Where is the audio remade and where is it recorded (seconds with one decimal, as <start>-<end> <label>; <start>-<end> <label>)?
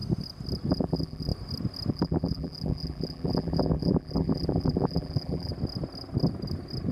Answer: 0.0-0.7 recorded; 0.7-1.3 remade; 1.3-1.9 recorded; 1.9-5.5 remade; 5.5-6.9 recorded